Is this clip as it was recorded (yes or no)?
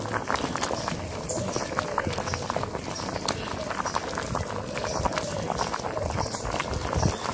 no